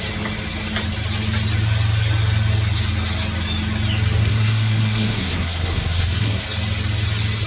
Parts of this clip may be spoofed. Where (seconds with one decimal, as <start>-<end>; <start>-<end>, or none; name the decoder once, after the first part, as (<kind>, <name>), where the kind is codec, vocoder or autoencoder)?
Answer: 4.2-6.4 (codec, SNAC)

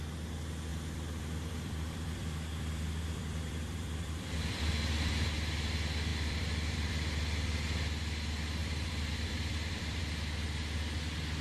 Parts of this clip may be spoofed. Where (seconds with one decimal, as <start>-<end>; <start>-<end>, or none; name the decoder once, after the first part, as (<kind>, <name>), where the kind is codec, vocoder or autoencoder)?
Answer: 0.7-4.6 (vocoder, BigVGAN v2); 6.1-6.9; 8.6-10.0

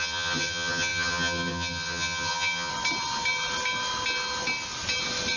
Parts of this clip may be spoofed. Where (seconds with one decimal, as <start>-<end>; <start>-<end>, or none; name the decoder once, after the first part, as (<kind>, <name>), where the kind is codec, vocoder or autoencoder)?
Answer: 0.0-2.7 (vocoder, HiFi-GAN)

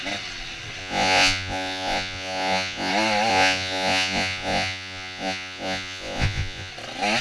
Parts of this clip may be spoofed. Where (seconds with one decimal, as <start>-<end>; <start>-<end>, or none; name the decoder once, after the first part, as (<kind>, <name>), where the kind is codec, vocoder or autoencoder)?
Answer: 0.8-2.9 (vocoder, Vocos); 3.3-6.7